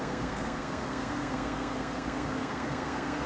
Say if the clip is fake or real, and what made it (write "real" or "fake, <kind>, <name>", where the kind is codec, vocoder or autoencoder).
fake, codec, SNAC